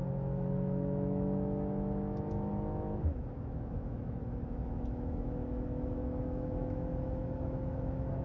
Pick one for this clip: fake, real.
fake